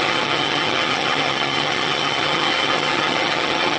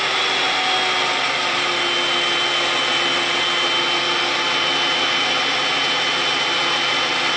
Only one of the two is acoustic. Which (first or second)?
second